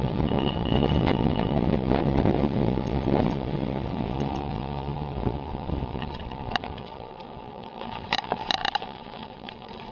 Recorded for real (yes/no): no